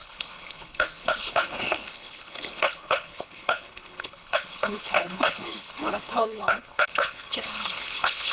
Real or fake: fake